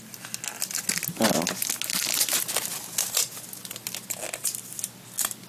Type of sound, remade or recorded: recorded